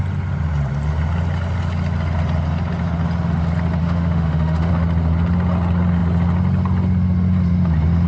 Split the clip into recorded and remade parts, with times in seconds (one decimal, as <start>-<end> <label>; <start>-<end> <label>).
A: 0.0-3.8 recorded; 3.8-4.7 remade; 4.7-8.1 recorded